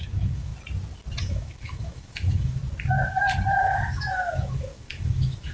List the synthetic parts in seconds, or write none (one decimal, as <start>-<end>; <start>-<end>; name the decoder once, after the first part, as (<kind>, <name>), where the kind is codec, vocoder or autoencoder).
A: 0.0-0.5 (autoencoder, DAC-VAE); 1.2-2.6; 3.6-5.5